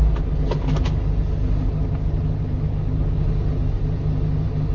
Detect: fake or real real